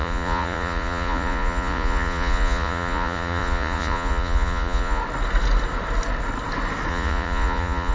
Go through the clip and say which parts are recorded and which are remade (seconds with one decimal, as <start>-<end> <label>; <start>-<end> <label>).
0.0-5.0 remade; 5.0-6.9 recorded; 6.9-7.9 remade